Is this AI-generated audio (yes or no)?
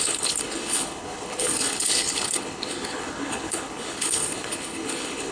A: yes